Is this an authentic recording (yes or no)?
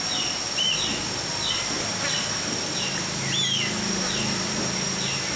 yes